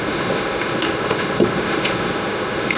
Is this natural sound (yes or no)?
no